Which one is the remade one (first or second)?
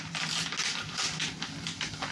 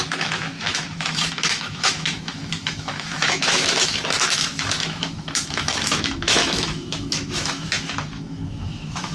second